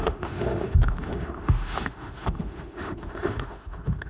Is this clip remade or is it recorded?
remade